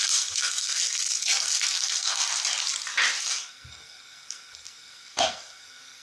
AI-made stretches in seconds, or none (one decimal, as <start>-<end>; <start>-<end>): 0.0-2.3; 3.2-6.0